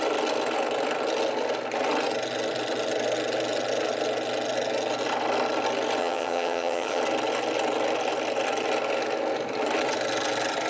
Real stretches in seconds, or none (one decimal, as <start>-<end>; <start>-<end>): 0.0-6.0; 7.0-10.7